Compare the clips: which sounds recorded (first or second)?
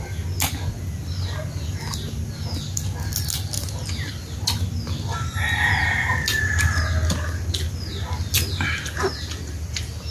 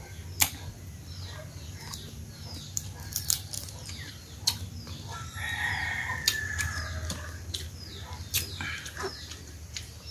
first